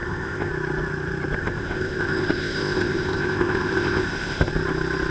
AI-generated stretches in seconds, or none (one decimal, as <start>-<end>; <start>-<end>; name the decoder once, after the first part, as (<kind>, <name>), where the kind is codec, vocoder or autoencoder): 0.0-0.5 (codec, ZipCodec); 1.4-4.5